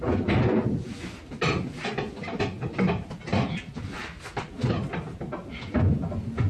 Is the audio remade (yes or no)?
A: no